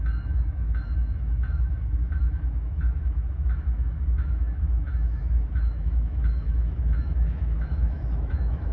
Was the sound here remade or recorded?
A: remade